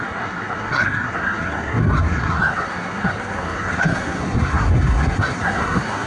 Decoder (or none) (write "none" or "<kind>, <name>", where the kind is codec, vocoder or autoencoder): codec, SNAC